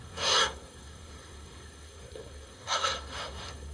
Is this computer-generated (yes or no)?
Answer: yes